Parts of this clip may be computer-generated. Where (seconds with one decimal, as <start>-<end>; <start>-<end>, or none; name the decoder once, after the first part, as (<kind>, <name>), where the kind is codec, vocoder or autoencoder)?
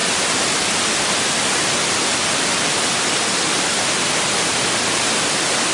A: none